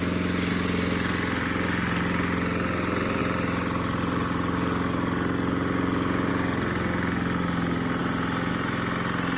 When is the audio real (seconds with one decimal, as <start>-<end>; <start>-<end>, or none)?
0.0-3.2; 6.3-8.0; 8.5-9.4